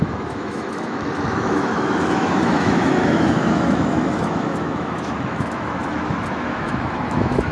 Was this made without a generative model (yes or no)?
no